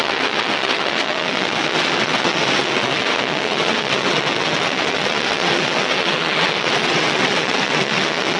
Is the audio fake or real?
fake